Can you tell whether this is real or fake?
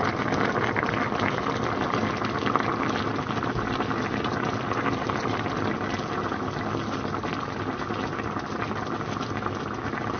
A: real